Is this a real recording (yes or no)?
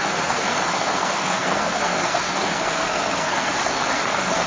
no